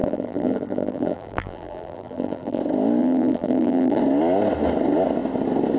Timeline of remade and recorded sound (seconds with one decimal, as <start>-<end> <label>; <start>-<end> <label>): 0.0-2.6 remade; 2.6-3.0 recorded; 3.0-4.0 remade; 4.0-5.8 recorded